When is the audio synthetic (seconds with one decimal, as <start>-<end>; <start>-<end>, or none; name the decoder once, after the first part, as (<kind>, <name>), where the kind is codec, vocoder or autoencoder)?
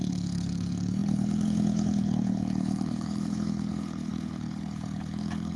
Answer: 0.0-5.6 (codec, HILCodec)